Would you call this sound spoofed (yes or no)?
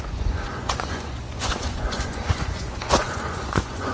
yes